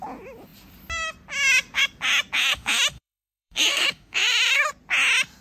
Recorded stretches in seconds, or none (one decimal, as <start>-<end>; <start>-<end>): 0.0-2.4; 4.7-5.4